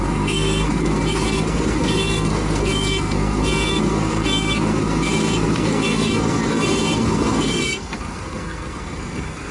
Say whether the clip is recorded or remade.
remade